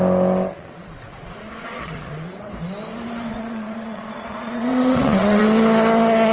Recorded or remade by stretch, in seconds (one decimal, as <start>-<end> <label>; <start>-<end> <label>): 0.0-0.5 recorded; 0.5-2.5 remade; 2.5-3.3 recorded; 3.3-5.4 remade; 5.4-6.3 recorded